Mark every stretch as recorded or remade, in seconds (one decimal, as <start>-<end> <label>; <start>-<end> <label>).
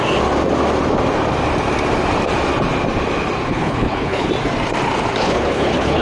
0.0-3.5 recorded; 3.5-4.3 remade; 4.3-5.2 recorded; 5.2-6.0 remade